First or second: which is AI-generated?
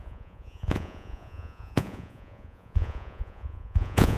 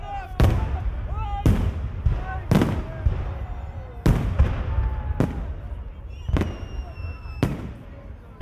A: first